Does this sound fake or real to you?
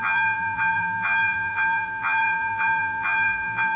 fake